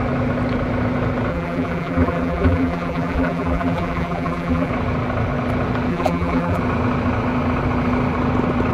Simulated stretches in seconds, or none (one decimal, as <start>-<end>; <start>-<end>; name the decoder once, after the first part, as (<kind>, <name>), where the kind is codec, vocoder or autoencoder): 1.3-4.7 (vocoder, BigVGAN v2); 5.9-6.6